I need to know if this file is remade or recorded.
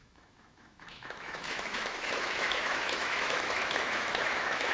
remade